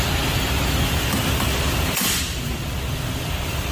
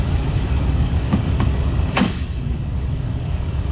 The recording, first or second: first